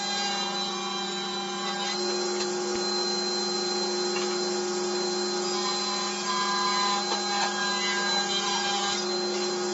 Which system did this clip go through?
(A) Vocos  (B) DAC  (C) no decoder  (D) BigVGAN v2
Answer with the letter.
C